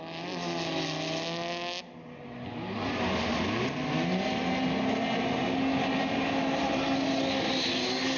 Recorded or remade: recorded